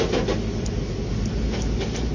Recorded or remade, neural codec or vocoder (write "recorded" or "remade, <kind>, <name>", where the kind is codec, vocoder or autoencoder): recorded